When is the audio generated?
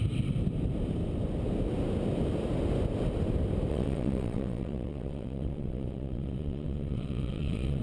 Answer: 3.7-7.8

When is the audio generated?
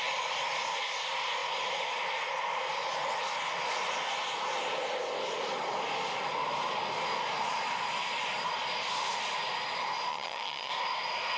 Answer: 10.1-10.7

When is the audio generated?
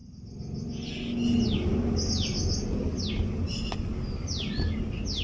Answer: none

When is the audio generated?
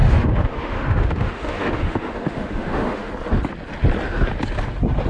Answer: 0.0-3.1